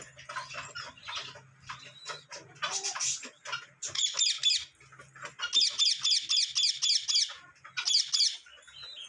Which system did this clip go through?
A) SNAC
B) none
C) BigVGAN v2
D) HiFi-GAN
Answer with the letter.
B